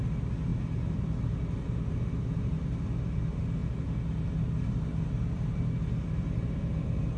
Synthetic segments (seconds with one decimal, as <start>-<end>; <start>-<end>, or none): none

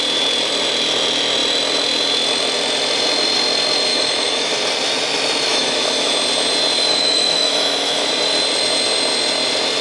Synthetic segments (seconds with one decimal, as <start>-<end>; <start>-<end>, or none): 3.9-4.5; 5.5-6.1; 6.9-8.1

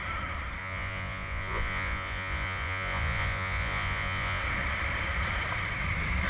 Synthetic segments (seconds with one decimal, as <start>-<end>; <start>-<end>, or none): 0.6-4.4

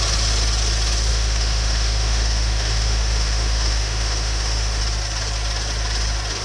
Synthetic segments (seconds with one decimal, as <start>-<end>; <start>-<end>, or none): 1.1-4.8

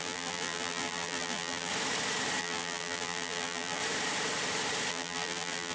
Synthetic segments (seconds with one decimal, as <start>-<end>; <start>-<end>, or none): 0.0-1.7; 2.4-3.8; 4.9-5.7

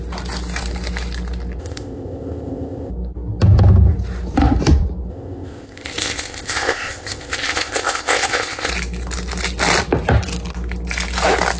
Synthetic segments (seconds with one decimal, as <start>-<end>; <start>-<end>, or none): 1.6-2.9; 5.1-8.7

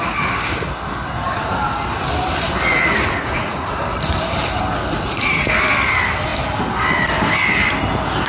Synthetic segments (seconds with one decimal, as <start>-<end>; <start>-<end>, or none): 2.7-3.8; 4.9-5.5